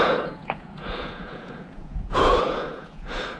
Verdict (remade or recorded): remade